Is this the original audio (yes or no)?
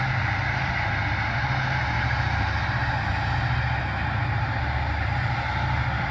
yes